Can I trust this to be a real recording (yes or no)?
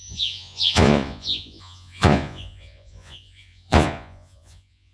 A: no